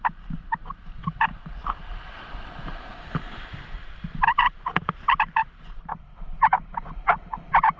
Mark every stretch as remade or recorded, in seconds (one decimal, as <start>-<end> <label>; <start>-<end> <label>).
0.0-1.3 recorded; 1.3-5.9 remade; 5.9-7.8 recorded